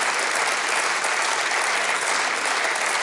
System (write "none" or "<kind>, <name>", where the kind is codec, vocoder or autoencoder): none